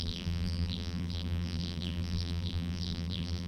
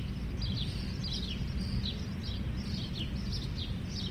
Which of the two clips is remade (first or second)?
first